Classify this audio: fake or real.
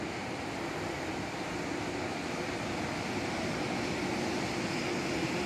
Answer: real